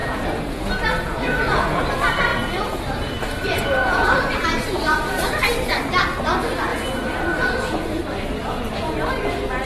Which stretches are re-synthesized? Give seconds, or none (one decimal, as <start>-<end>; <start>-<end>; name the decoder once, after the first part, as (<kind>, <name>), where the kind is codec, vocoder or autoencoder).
0.0-1.9 (vocoder, Vocos); 2.3-5.4; 6.7-8.0